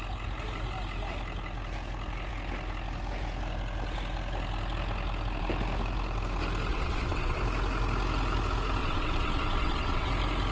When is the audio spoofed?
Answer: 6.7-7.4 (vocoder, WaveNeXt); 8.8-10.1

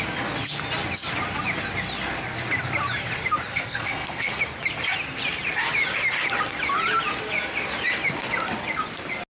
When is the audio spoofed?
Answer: 3.5-4.4 (codec, SNAC)

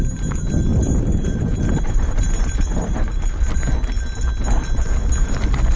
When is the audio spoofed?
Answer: 0.7-3.5 (vocoder, BigVGAN v2)

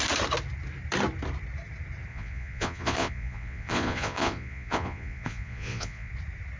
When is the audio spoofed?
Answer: 2.1-6.1 (vocoder, Vocos)